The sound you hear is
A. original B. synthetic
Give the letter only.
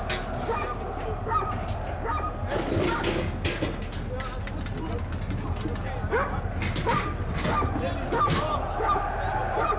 A